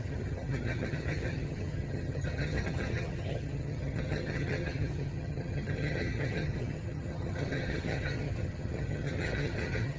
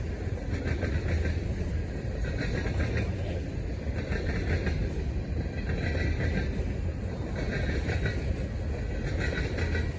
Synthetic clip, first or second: first